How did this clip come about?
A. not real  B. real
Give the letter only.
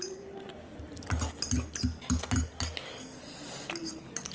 B